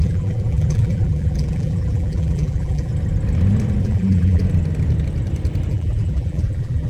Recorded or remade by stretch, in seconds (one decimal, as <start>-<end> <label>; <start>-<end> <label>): 0.0-2.9 remade; 2.9-3.8 recorded; 3.8-4.4 remade; 4.4-5.7 recorded; 5.7-6.9 remade